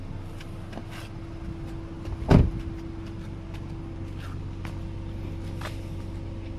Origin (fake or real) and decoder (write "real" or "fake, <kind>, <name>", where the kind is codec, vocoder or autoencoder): real